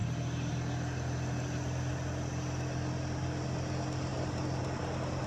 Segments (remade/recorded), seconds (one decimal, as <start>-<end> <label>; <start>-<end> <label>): 0.0-5.3 recorded